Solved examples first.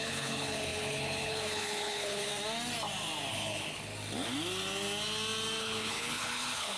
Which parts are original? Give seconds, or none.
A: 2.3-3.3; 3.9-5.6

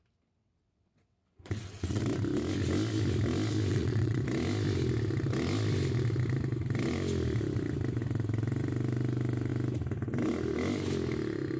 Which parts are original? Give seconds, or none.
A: 0.0-0.4; 2.0-3.7; 4.2-11.6

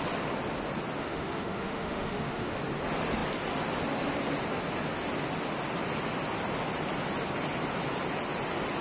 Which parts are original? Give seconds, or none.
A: 0.0-1.0; 2.6-8.8